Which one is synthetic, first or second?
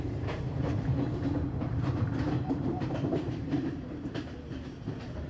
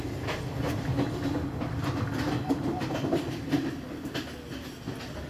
first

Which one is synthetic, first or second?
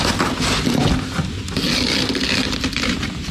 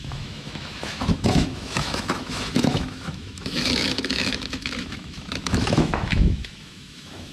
second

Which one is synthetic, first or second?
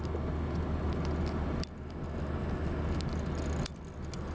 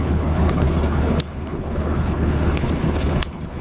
second